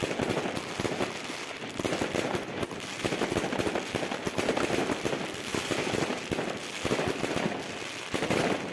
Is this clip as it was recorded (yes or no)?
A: yes